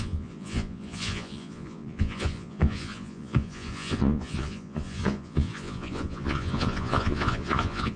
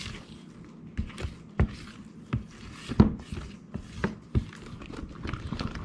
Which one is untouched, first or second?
second